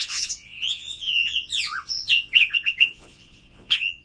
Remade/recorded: remade